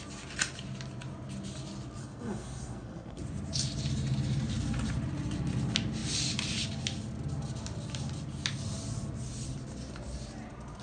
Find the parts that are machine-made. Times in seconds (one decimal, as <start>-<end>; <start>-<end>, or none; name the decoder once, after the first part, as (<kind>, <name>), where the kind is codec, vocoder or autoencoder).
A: 2.0-3.2 (codec, SNAC)